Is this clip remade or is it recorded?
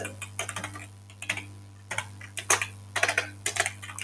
recorded